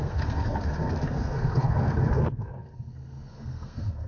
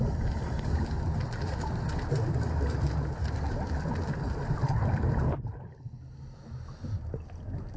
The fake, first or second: first